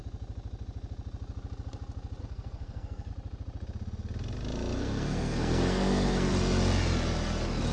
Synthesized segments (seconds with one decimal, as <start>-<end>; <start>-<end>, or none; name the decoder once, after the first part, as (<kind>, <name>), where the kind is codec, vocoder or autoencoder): 2.2-3.1 (codec, SNAC); 4.8-6.3